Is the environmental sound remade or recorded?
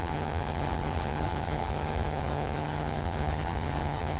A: remade